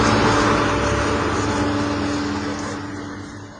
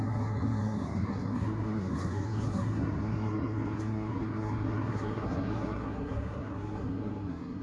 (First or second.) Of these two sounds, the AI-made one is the second